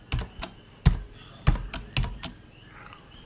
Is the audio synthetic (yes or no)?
no